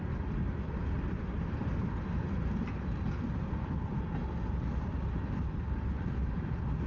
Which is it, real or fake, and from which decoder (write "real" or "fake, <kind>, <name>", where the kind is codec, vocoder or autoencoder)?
real